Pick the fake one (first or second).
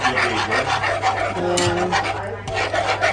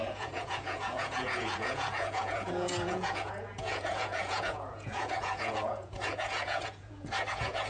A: second